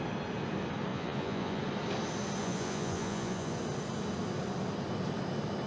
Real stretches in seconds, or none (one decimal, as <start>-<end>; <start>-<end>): 0.0-0.9; 1.6-2.4; 3.6-5.7